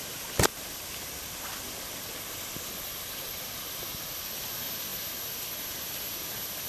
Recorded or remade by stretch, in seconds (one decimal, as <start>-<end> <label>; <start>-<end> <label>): 0.0-0.5 recorded; 0.5-4.5 remade; 4.5-6.7 recorded